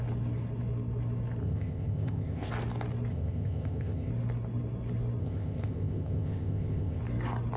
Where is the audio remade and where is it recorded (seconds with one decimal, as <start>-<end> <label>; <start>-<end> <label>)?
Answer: 0.0-1.4 recorded; 1.4-2.5 remade; 2.5-3.1 recorded; 3.1-4.1 remade; 4.1-5.2 recorded; 5.2-7.0 remade; 7.0-7.6 recorded